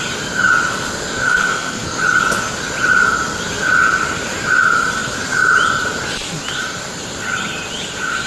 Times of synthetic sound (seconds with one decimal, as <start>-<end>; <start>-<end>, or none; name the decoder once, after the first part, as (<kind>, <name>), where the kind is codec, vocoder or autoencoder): 1.1-2.0 (codec, SNAC)